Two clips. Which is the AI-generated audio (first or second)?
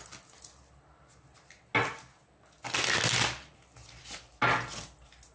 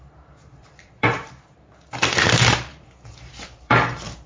second